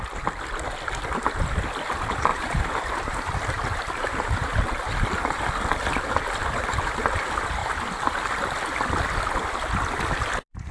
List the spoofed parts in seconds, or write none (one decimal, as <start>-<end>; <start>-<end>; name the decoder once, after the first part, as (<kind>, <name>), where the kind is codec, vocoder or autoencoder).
2.3-4.8 (vocoder, BigVGAN v2); 7.6-8.2